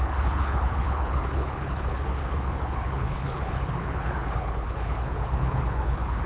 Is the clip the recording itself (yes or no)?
no